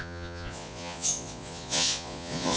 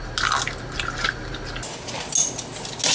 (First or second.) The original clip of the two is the second